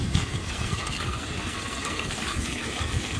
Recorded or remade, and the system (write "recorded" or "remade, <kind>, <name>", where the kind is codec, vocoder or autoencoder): remade, codec, SNAC